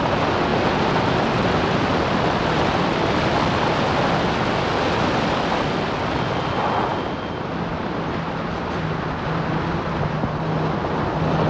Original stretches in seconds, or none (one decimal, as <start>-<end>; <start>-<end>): 0.0-11.5